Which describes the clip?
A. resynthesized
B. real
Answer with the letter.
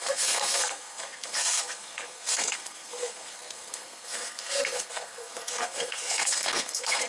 A